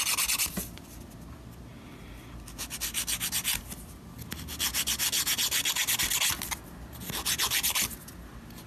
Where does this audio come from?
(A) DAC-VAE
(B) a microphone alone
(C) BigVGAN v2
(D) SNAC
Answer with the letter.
B